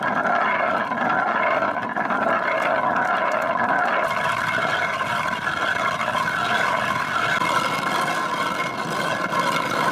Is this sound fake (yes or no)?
no